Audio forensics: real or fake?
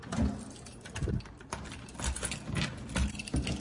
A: real